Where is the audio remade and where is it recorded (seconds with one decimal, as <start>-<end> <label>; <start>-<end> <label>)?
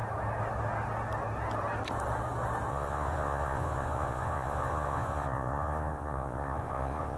0.0-2.7 recorded; 2.7-7.2 remade